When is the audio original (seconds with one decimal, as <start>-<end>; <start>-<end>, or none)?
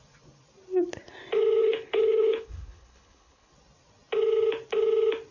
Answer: 0.0-1.6; 3.5-5.3